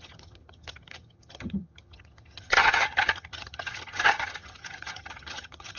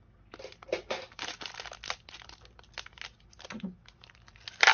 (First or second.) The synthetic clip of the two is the first